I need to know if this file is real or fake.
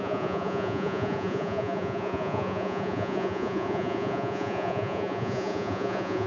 fake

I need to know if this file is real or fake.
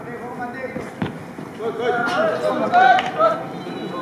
real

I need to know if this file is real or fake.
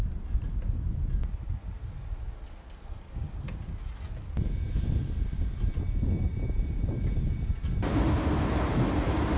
real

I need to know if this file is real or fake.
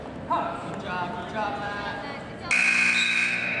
real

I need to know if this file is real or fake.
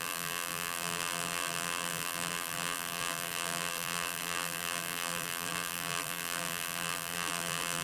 fake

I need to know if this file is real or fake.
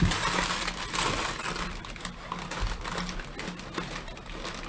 real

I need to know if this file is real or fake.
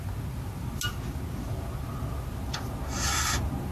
real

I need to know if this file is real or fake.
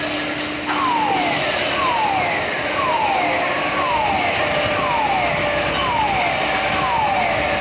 real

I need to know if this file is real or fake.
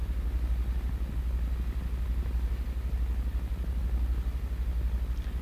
real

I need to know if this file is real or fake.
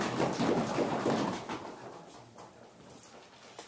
real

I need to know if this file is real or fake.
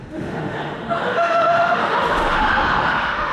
fake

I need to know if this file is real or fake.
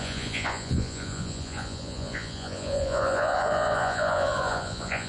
fake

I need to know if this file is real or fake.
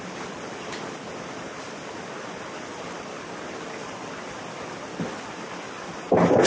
real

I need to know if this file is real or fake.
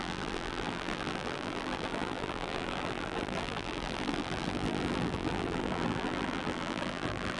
fake